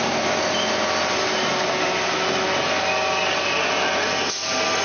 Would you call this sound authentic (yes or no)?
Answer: yes